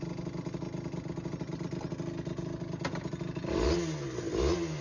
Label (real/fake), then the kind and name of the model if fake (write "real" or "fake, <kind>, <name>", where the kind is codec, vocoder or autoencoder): real